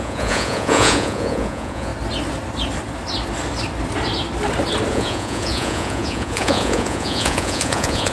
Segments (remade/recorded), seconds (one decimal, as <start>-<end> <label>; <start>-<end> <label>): 0.0-1.9 remade; 1.9-4.9 recorded; 4.9-8.1 remade